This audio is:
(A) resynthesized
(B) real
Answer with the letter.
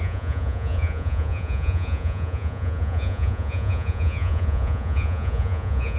A